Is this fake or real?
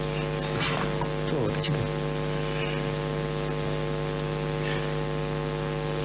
real